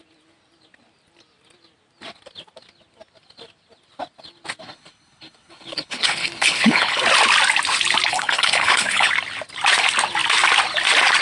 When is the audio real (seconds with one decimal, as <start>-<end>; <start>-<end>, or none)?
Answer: 0.0-4.6; 7.0-8.1; 9.1-11.2